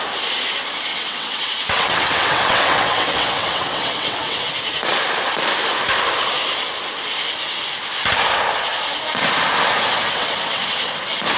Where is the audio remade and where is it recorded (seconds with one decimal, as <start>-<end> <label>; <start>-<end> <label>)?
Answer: 0.0-0.9 recorded; 0.9-4.4 remade; 4.4-10.1 recorded; 10.1-10.6 remade; 10.6-11.4 recorded